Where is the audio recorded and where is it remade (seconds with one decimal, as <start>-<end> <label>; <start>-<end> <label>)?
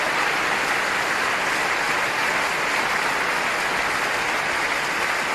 0.0-5.3 recorded